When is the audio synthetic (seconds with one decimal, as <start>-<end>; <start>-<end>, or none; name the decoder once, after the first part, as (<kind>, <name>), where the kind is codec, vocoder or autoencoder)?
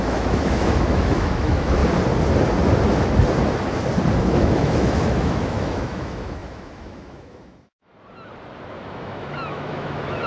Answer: 0.0-1.8 (autoencoder, DAC-VAE); 4.2-7.9; 8.8-10.3